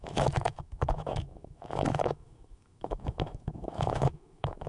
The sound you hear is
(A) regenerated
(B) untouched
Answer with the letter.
A